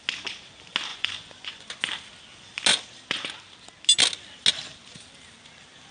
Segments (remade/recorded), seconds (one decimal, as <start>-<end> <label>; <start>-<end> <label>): 0.0-0.9 recorded; 0.9-1.7 remade; 1.7-5.9 recorded